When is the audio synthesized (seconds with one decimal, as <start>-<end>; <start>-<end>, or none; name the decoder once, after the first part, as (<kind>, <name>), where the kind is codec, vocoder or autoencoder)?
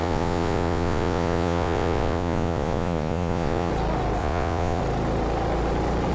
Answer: 0.0-3.7 (vocoder, Vocos); 4.2-4.8